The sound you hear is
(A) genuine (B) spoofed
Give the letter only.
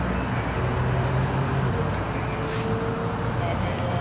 A